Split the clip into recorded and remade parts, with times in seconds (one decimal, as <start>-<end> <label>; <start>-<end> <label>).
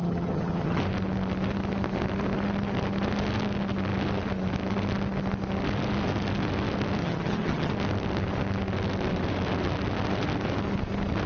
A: 0.0-0.8 remade; 0.8-7.0 recorded; 7.0-7.7 remade; 7.7-11.3 recorded